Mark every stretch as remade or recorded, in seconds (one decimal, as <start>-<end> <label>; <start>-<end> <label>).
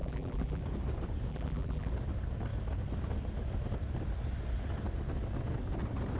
0.0-0.6 remade; 0.6-1.3 recorded; 1.3-1.9 remade; 1.9-6.2 recorded